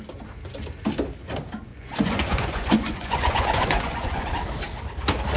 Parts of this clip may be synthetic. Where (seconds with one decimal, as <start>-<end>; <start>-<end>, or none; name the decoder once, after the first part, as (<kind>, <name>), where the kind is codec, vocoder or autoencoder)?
1.7-4.3 (vocoder, Vocos)